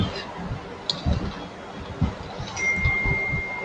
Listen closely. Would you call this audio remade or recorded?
recorded